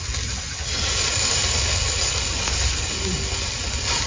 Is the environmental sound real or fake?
real